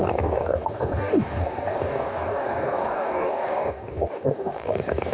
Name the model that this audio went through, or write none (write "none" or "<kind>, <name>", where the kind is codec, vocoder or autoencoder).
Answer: codec, DAC